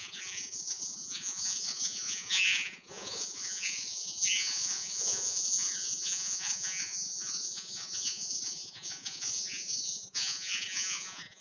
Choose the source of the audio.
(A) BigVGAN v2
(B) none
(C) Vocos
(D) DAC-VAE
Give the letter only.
C